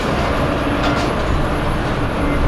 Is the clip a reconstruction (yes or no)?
no